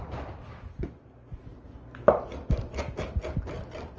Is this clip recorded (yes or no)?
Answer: yes